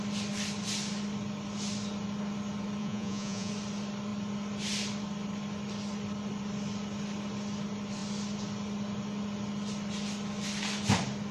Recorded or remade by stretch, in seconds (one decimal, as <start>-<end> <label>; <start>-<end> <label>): 0.0-2.8 recorded; 2.8-3.5 remade; 3.5-11.3 recorded